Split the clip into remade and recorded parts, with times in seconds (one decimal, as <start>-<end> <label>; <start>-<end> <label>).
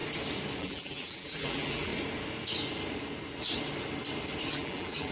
0.0-0.6 recorded; 0.6-1.9 remade; 1.9-4.5 recorded; 4.5-5.1 remade